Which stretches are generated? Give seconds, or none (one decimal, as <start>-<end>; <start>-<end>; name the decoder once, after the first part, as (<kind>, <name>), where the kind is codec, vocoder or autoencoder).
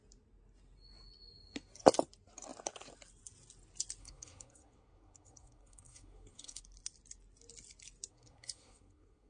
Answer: 4.0-6.6 (codec, SNAC); 8.1-9.3